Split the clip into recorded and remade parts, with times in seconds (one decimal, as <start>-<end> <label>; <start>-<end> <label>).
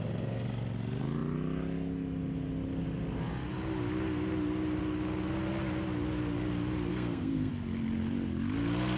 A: 0.0-6.9 recorded; 6.9-7.5 remade; 7.5-9.0 recorded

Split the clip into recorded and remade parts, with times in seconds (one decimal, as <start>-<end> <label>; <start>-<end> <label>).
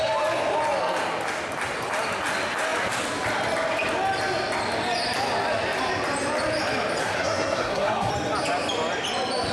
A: 0.0-7.0 recorded; 7.0-8.1 remade; 8.1-9.5 recorded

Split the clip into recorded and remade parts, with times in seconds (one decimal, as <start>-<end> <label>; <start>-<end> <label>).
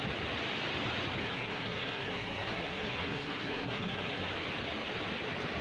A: 0.0-1.2 recorded; 1.2-4.3 remade; 4.3-5.6 recorded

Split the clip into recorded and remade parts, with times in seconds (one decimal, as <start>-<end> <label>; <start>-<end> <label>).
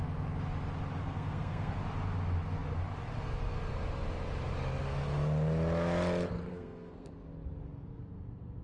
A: 0.0-1.0 recorded; 1.0-1.7 remade; 1.7-6.5 recorded; 6.5-7.1 remade; 7.1-8.6 recorded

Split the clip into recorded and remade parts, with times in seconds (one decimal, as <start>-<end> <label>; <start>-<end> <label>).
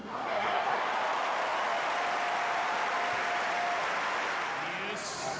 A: 0.0-0.8 remade; 0.8-5.4 recorded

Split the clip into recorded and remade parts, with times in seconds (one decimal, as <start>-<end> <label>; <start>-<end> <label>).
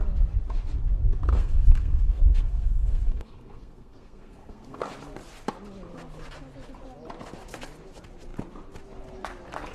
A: 0.0-1.3 recorded; 1.3-4.8 remade; 4.8-9.7 recorded